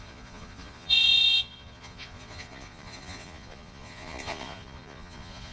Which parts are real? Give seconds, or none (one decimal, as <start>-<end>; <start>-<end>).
none